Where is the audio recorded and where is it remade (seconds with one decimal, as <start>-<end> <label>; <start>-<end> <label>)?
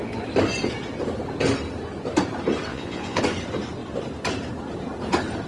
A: 0.0-2.7 recorded; 2.7-3.2 remade; 3.2-5.5 recorded